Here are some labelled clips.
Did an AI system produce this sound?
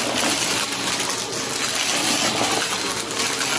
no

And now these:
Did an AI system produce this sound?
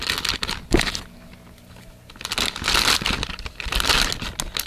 no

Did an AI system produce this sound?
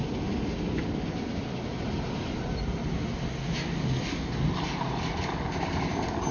no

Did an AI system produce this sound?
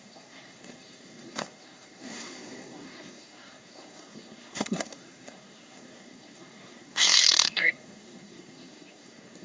yes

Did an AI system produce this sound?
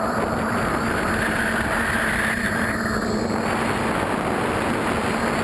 no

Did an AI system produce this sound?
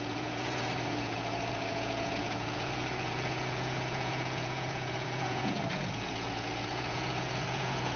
yes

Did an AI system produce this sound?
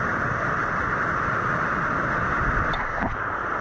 no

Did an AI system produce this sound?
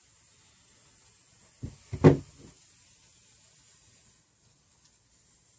no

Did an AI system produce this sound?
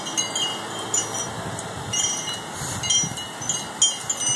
no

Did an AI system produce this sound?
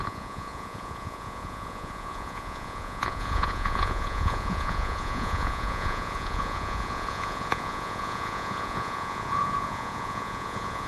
yes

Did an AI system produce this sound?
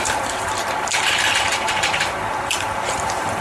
yes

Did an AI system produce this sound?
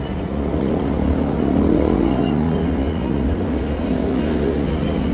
yes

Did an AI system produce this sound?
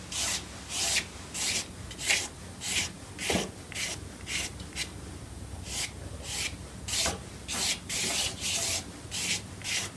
no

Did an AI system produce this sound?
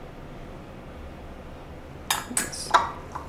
no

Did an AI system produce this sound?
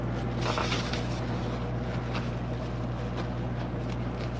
no